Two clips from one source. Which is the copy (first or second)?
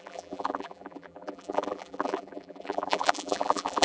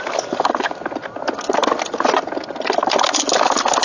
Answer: first